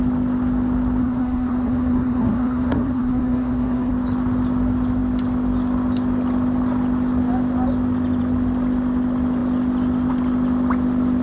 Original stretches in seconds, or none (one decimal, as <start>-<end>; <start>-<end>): 0.0-1.0; 3.9-11.2